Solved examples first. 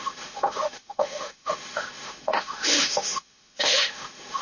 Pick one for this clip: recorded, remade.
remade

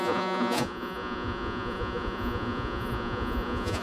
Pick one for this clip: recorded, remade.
remade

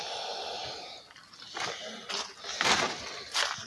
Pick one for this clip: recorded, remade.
recorded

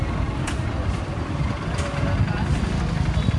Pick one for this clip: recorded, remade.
recorded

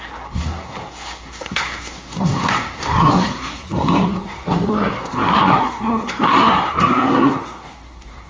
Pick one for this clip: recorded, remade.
remade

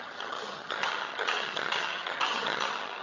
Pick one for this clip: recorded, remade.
remade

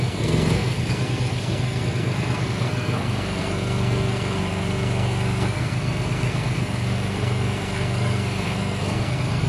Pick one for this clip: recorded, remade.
remade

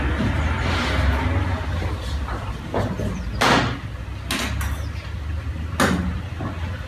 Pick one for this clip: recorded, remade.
recorded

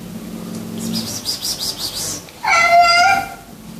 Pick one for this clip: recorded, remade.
recorded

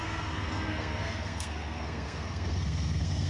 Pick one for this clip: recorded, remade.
remade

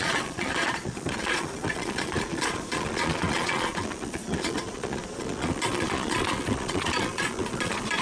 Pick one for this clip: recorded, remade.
remade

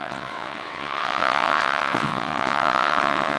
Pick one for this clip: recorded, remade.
remade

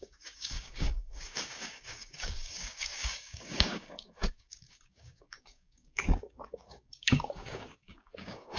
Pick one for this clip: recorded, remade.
remade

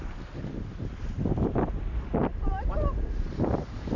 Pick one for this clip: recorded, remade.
remade